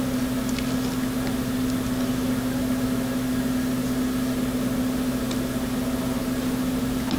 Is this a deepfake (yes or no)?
no